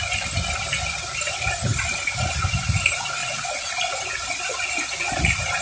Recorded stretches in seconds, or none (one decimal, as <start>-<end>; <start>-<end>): 0.0-3.2; 3.7-5.6

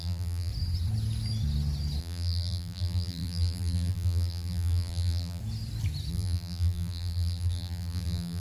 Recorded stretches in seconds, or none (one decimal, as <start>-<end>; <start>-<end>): 0.5-2.0; 5.4-6.1

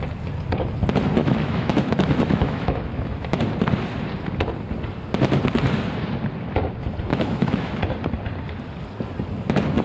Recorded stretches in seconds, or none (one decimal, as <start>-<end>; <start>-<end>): 0.0-1.2; 3.4-7.1; 7.7-9.8

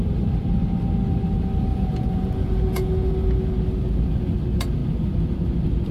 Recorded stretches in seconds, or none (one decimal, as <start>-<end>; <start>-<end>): 0.0-1.7; 3.1-5.9

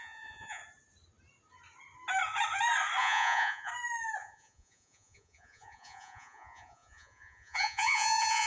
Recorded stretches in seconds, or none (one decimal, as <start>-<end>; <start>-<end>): 0.6-3.0; 3.7-4.2

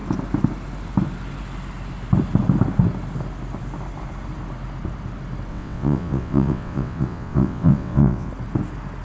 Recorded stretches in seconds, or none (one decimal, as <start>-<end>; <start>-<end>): 0.0-5.5; 8.3-9.0

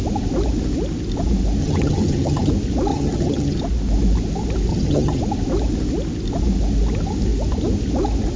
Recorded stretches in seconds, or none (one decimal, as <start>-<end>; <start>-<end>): 0.0-1.6; 2.5-2.9; 3.6-4.7; 5.2-8.4